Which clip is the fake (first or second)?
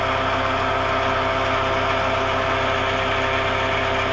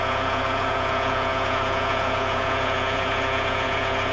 second